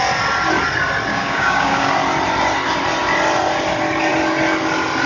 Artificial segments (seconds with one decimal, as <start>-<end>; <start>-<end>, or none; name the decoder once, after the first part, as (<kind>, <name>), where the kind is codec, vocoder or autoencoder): 1.1-1.9 (codec, DAC)